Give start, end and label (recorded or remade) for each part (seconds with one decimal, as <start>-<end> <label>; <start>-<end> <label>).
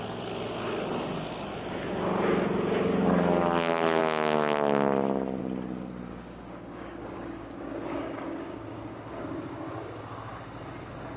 0.0-6.1 recorded; 6.1-9.2 remade; 9.2-11.2 recorded